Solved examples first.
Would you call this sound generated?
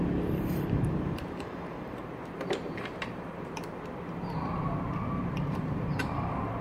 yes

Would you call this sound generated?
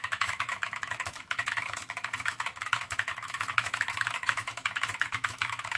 yes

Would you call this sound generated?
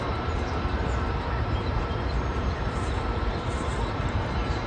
yes